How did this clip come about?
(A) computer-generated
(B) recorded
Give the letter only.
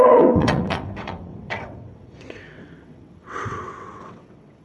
A